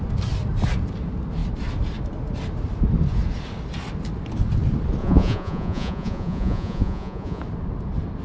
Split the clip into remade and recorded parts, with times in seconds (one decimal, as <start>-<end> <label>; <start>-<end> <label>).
0.0-5.0 recorded; 5.0-7.4 remade; 7.4-8.2 recorded